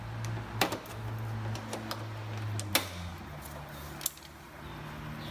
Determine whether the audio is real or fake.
real